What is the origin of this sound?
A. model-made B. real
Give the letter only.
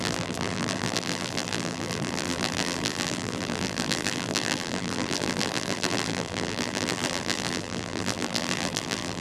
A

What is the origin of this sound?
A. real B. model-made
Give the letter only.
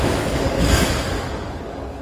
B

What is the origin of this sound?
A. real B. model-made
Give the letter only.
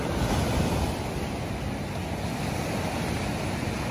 A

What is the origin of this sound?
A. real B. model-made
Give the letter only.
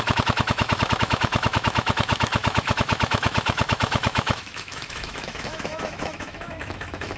B